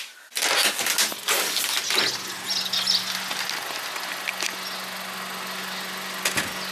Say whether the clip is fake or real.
real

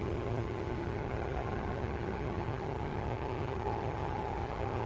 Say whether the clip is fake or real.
fake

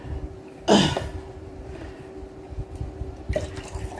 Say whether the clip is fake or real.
real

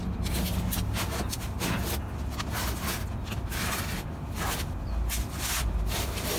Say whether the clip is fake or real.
real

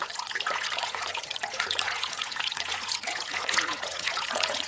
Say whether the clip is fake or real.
fake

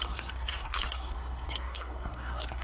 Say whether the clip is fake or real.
fake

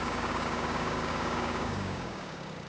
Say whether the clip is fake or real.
fake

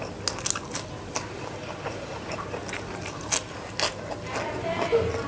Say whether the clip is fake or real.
real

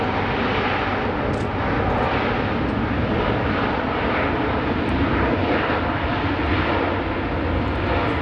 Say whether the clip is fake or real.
real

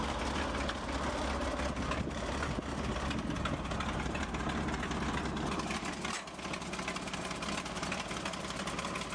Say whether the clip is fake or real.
real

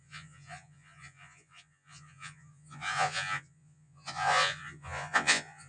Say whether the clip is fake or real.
fake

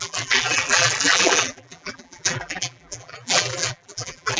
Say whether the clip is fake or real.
fake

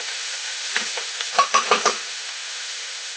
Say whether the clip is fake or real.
fake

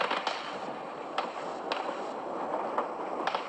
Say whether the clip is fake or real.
real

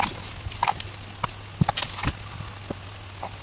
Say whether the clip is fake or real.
real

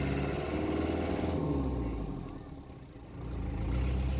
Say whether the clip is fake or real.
real